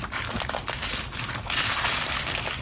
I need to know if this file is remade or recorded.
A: recorded